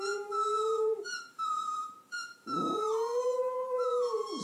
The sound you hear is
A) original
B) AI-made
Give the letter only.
B